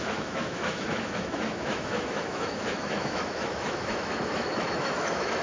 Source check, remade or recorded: remade